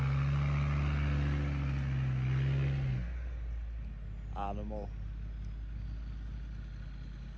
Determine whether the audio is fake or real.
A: real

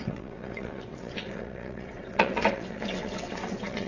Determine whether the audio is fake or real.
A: fake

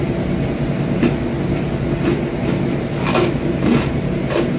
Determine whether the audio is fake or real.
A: real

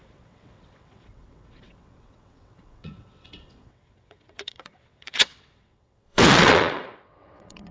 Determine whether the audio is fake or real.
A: fake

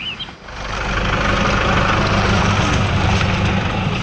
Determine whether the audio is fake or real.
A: real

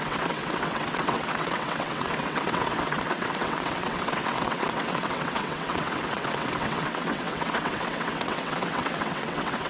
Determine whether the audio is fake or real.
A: fake